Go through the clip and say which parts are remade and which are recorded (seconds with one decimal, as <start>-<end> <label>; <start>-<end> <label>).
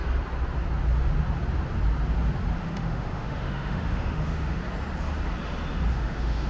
0.0-2.6 recorded; 2.6-4.6 remade; 4.6-5.9 recorded; 5.9-6.5 remade